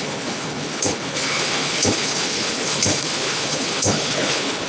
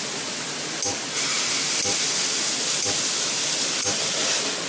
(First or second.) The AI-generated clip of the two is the first